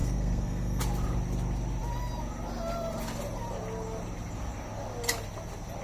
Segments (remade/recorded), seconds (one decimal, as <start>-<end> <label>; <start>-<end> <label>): 0.0-0.8 remade; 0.8-5.8 recorded